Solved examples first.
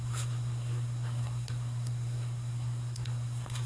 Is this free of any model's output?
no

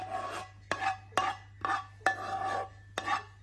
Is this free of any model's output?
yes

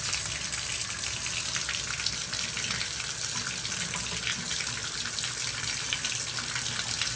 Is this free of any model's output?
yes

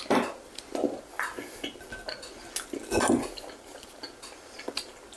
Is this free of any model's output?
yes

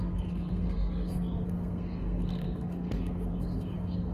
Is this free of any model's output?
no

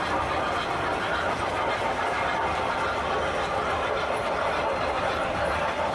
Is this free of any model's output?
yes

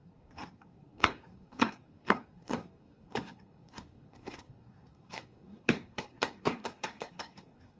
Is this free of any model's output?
no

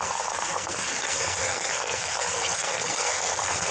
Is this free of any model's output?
no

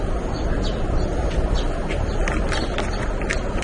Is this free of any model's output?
yes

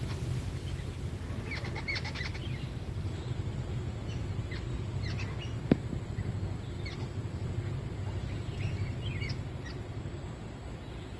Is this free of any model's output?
yes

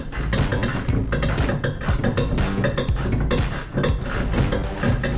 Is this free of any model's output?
yes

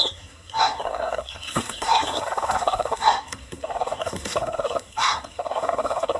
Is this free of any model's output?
no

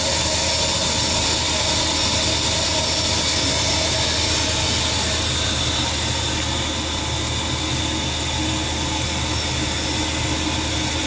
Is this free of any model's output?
yes